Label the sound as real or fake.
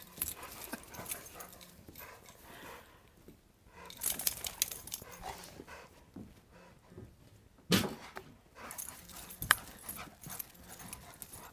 real